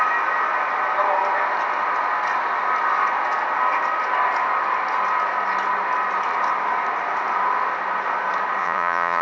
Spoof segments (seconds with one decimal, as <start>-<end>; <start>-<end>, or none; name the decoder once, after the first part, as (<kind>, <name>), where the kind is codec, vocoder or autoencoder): 8.6-9.2 (vocoder, Vocos)